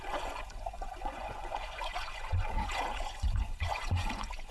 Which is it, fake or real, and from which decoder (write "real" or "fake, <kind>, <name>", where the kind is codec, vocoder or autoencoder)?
fake, vocoder, Vocos